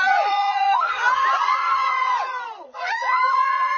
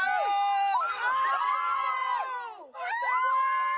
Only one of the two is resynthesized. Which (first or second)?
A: first